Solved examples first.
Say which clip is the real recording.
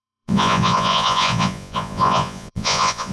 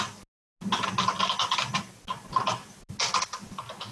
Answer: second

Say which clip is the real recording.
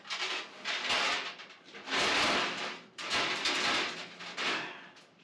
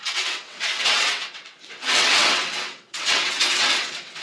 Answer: first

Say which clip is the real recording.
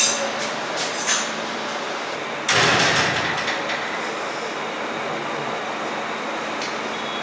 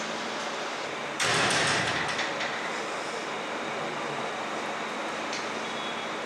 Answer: first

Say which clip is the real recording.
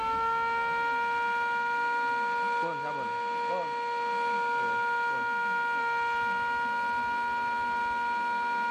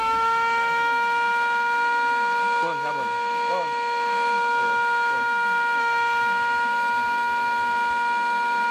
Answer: first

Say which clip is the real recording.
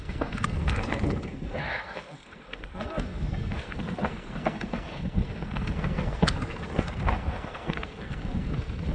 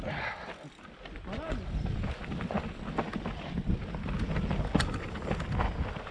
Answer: second